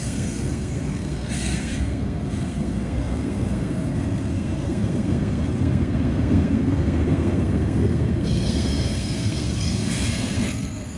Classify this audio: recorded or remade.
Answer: remade